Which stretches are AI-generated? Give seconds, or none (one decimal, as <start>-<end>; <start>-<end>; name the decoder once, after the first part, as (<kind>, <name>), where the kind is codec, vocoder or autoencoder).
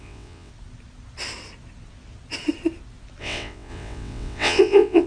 0.0-0.5 (vocoder, WaveNeXt); 3.2-5.1